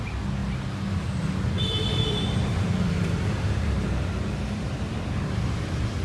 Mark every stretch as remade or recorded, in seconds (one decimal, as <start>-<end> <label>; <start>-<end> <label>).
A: 0.0-1.6 recorded; 1.6-5.0 remade; 5.0-6.0 recorded